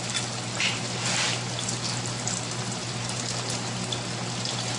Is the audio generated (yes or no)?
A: no